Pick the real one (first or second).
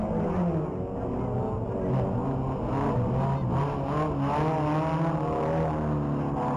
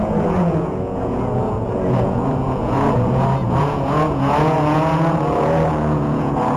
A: first